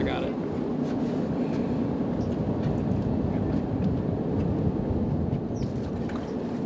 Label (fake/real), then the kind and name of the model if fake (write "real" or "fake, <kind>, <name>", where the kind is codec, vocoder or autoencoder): real